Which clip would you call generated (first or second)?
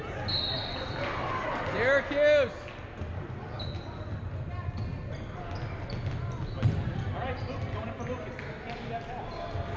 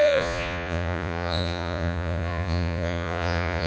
second